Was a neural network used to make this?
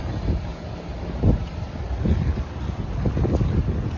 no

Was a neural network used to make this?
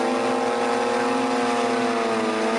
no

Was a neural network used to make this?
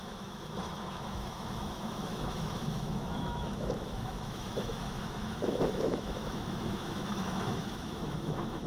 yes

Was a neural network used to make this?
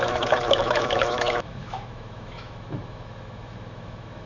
yes